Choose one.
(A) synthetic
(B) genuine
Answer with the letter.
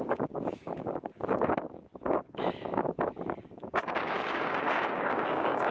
A